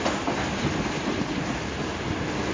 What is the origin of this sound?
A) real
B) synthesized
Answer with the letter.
A